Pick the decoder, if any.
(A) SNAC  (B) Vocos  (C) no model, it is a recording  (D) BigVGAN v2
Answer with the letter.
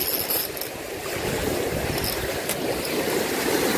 C